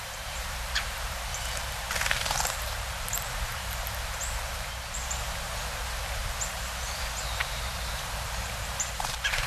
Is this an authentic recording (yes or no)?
no